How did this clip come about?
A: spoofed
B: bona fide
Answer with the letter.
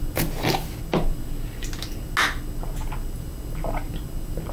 B